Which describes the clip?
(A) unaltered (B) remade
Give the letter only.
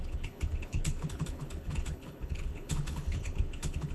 B